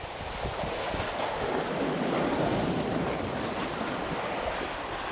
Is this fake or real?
real